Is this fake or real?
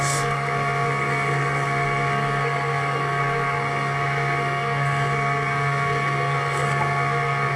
fake